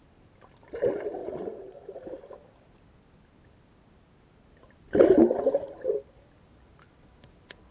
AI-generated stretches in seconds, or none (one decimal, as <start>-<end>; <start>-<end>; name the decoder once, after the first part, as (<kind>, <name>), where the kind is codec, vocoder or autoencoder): 1.2-2.0 (vocoder, Vocos)